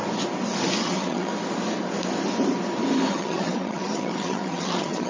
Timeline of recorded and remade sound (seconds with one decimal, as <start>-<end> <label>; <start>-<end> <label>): 0.0-0.8 recorded; 0.8-1.3 remade; 1.3-3.1 recorded; 3.1-5.1 remade